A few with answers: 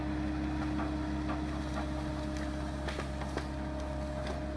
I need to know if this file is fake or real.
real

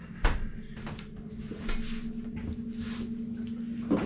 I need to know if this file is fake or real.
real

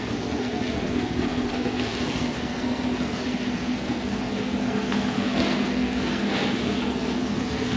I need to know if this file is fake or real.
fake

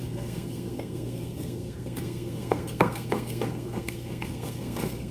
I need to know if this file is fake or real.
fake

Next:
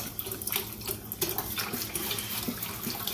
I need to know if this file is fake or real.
real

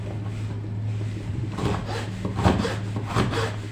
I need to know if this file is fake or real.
real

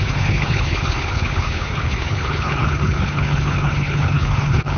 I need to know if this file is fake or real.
fake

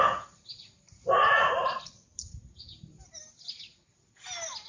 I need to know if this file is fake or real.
real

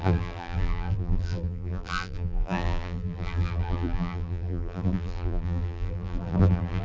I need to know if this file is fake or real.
fake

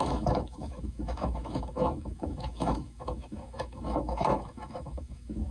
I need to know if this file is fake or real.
fake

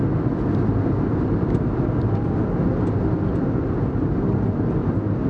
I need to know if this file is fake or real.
real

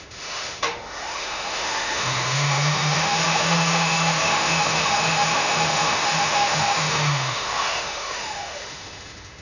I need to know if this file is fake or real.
fake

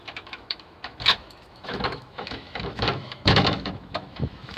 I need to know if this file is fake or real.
fake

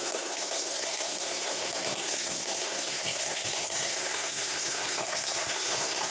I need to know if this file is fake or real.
fake